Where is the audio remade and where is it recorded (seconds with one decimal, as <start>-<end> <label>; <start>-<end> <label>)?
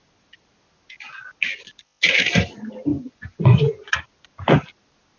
0.0-2.9 recorded; 2.9-3.9 remade; 3.9-5.2 recorded